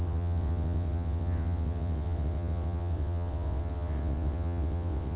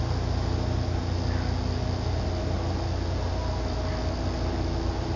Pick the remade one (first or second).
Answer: first